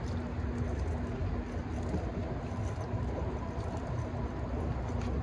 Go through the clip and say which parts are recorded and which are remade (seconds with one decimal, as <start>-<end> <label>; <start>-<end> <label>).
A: 0.0-5.2 recorded